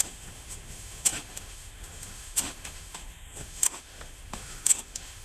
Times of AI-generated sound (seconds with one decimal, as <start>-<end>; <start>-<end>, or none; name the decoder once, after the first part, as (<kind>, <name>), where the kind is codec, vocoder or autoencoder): 0.0-5.2 (autoencoder, DAC-VAE)